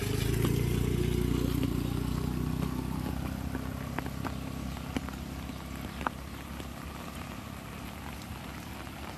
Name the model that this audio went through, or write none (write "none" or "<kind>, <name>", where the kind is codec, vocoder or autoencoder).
none